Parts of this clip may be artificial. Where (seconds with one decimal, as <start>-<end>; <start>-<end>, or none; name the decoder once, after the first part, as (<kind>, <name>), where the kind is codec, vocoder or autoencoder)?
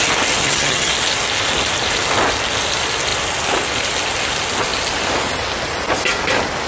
0.4-0.9 (vocoder, HiFi-GAN)